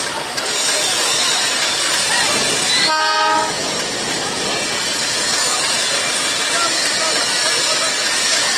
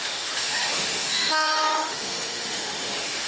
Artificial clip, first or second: second